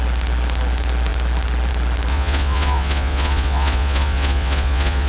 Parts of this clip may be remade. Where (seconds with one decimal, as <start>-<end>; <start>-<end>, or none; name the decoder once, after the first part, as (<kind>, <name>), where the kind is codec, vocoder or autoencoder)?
2.1-5.1 (vocoder, Vocos)